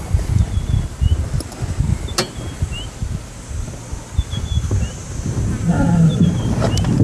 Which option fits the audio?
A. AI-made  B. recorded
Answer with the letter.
B